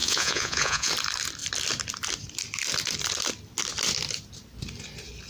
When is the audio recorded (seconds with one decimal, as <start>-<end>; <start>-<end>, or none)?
0.9-5.3